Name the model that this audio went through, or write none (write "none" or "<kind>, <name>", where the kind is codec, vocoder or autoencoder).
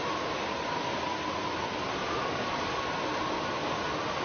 none